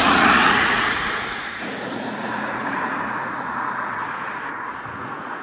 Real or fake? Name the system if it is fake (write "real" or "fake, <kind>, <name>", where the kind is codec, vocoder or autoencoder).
fake, vocoder, Vocos